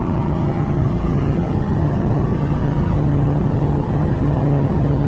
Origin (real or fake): fake